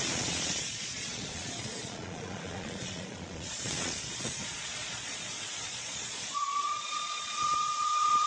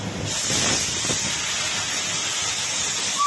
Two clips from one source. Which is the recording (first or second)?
second